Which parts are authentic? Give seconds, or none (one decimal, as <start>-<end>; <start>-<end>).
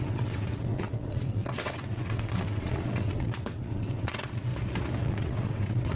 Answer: 4.5-5.0